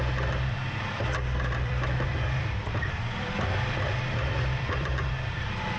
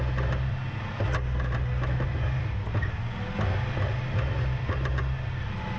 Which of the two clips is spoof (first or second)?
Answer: first